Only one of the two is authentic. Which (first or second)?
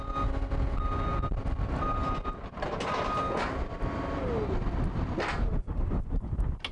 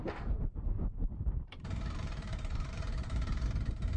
first